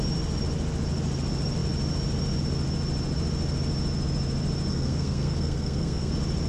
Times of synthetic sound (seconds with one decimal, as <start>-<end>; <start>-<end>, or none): 4.7-6.1